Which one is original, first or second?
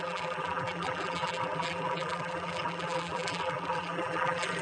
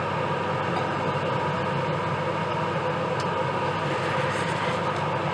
second